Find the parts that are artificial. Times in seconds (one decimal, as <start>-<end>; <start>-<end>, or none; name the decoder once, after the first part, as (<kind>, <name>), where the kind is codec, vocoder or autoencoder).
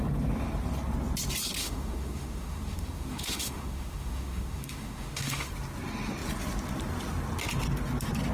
1.6-5.5 (autoencoder, DAC-VAE)